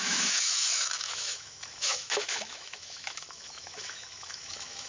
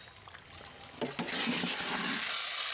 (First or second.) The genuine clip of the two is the second